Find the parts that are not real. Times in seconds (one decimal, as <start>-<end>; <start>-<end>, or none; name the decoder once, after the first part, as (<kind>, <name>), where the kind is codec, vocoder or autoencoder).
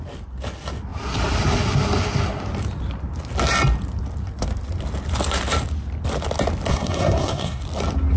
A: 6.7-7.6 (codec, SNAC)